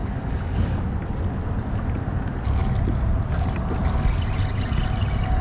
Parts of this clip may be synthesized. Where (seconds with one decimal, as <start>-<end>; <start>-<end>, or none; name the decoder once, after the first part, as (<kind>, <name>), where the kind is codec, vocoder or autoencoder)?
0.0-0.8 (codec, DAC)